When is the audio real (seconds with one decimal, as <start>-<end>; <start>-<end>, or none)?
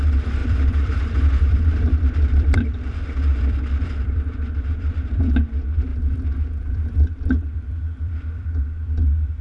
0.0-0.4; 5.3-5.9; 8.6-9.4